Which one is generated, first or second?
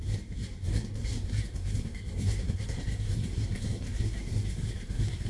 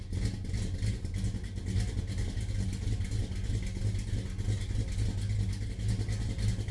first